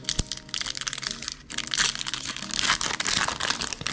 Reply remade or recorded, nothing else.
recorded